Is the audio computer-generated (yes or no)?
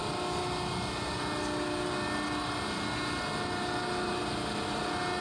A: no